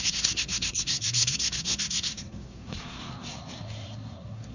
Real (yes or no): no